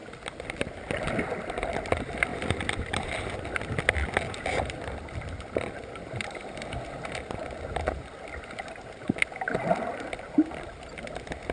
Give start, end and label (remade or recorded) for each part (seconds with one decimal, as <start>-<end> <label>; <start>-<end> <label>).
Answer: 0.0-1.1 remade; 1.1-2.3 recorded; 2.3-6.8 remade; 6.8-11.5 recorded